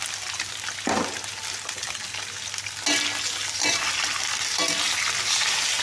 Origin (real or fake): real